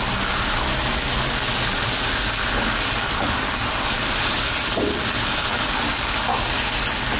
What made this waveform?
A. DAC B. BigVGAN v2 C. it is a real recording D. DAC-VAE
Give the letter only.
C